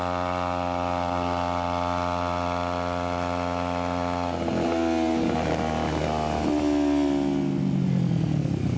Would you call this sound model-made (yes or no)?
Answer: no